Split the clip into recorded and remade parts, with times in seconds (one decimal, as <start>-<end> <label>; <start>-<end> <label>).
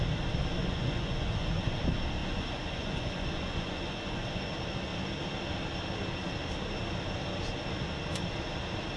0.0-0.6 recorded; 0.6-1.8 remade; 1.8-2.2 recorded; 2.2-4.4 remade; 4.4-9.0 recorded